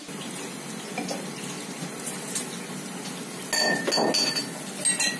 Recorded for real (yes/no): yes